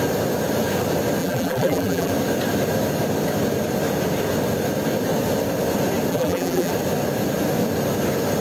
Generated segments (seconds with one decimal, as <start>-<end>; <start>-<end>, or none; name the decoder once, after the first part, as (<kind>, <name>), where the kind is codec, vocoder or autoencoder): 1.2-2.1 (vocoder, BigVGAN v2); 6.1-6.7